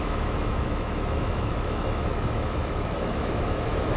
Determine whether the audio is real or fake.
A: fake